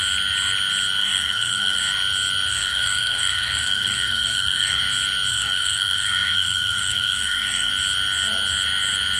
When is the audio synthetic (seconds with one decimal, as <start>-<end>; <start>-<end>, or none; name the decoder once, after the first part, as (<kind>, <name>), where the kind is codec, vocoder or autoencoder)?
1.0-1.8 (codec, SNAC); 2.5-4.8; 5.3-7.7

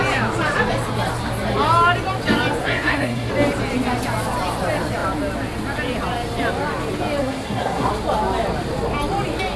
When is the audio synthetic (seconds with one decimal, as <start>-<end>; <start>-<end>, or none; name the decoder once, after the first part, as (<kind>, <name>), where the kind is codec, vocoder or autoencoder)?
2.6-3.3 (codec, SNAC); 7.2-7.9

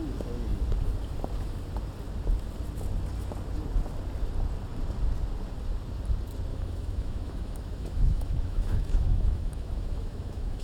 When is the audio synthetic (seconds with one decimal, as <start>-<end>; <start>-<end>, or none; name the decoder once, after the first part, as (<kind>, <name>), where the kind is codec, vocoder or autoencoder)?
6.5-10.6 (autoencoder, DAC-VAE)

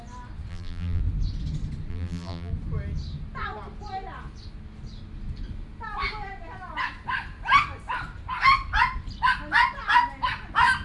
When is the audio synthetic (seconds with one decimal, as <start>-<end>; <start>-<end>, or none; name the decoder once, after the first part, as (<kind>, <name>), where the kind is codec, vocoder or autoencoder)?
0.5-1.0 (vocoder, BigVGAN v2); 1.9-2.5

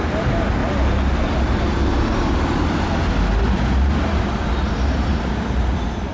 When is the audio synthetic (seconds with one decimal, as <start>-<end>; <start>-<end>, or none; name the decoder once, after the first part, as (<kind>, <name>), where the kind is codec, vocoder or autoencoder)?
none

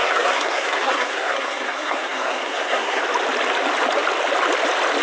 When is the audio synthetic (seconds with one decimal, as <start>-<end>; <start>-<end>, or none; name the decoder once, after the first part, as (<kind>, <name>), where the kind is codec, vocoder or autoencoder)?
0.0-3.0 (codec, SNAC)